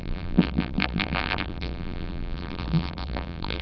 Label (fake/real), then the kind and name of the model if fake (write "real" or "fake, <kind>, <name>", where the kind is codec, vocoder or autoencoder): fake, vocoder, BigVGAN v2